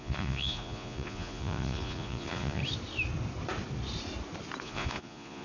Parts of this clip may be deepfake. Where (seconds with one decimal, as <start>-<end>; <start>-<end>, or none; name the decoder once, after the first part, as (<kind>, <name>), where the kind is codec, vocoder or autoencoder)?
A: 0.0-2.6 (vocoder, Vocos); 4.6-5.4